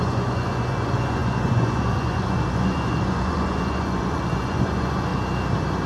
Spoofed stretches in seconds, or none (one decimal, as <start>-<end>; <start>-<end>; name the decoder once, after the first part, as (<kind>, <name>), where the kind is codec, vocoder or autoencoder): 0.0-5.1 (vocoder, Vocos)